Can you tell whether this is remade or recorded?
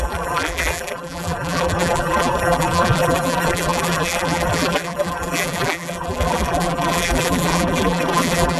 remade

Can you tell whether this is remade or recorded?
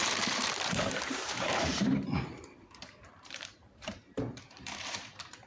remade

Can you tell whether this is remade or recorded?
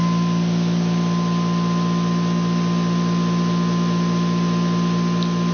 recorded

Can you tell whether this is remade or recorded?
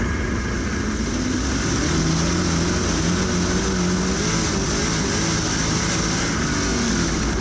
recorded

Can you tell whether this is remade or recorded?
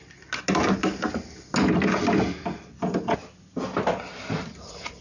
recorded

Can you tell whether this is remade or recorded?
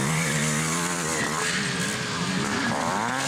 recorded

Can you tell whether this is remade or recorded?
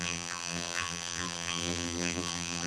remade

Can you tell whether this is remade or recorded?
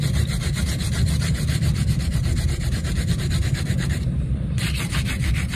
remade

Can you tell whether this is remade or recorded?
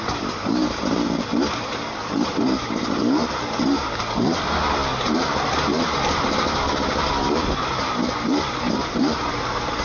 remade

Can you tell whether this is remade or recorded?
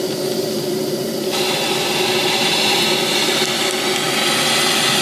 recorded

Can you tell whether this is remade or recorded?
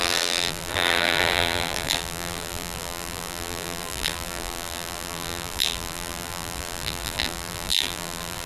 remade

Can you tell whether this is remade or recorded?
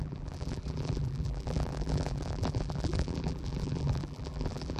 remade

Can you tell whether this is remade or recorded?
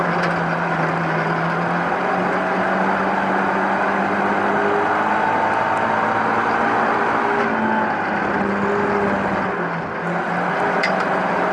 recorded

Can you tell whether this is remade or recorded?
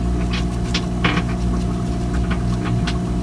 recorded